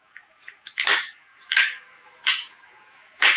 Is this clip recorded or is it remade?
remade